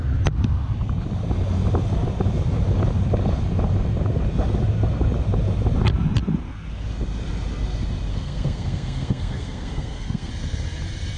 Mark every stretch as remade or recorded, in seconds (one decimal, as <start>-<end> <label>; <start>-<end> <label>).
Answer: 0.0-8.1 recorded; 8.1-10.3 remade; 10.3-11.2 recorded